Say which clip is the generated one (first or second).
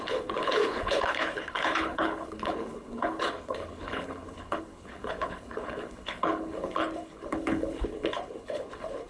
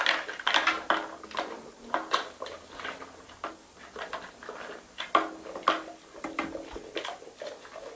first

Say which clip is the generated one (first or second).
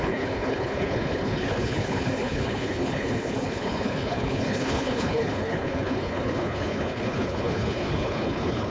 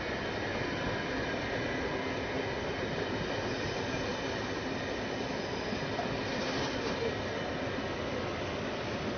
first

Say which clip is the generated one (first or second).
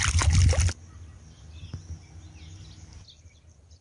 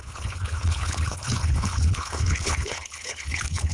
second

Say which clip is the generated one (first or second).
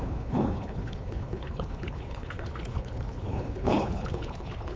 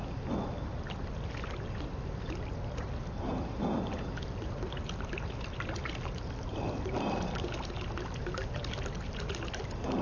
first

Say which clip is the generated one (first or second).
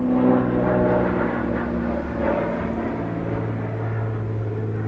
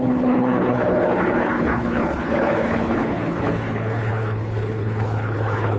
second